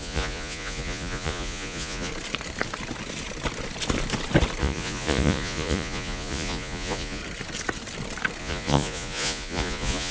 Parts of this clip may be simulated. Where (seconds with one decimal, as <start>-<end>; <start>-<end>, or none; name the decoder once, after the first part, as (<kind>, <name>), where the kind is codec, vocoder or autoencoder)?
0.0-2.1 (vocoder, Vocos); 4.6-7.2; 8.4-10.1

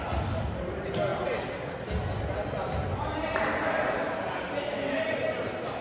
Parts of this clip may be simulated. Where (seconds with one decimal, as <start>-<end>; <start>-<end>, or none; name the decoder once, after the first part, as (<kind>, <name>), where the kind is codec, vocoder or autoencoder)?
none

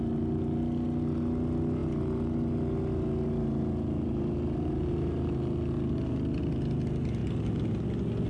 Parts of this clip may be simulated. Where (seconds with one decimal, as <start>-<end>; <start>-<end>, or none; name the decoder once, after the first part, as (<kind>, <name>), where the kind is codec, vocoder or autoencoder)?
none

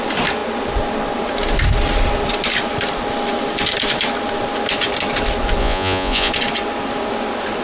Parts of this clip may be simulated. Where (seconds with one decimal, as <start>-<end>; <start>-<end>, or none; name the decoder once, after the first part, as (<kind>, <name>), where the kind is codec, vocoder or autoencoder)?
5.6-6.3 (vocoder, Vocos)